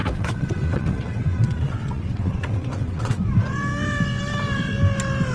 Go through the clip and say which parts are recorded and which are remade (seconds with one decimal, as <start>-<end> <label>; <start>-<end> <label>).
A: 0.0-3.2 remade; 3.2-5.3 recorded